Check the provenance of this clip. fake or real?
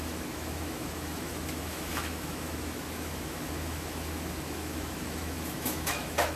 fake